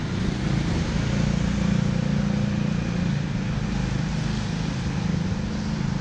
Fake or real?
real